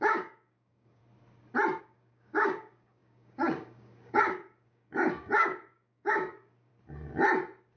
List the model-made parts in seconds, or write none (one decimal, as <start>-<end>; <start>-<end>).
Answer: 0.0-1.0; 1.8-6.7